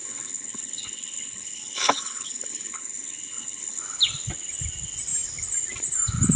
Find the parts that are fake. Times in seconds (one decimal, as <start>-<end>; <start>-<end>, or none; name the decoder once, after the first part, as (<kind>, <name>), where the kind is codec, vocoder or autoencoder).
0.0-3.8 (codec, HILCodec)